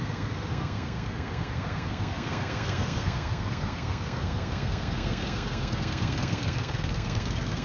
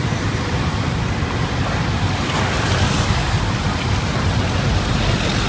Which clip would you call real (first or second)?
second